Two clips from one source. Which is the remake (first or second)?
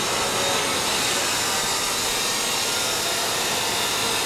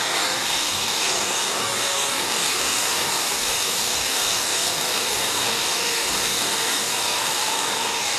second